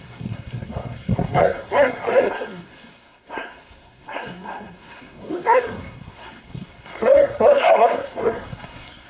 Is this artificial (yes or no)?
yes